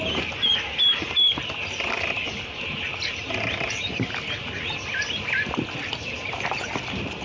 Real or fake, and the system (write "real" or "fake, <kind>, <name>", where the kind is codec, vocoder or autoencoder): real